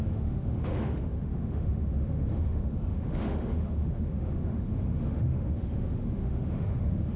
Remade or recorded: remade